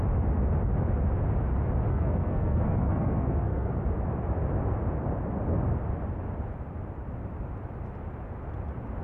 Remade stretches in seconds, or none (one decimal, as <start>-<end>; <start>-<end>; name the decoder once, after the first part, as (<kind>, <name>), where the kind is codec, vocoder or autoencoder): 1.9-3.7 (codec, SNAC)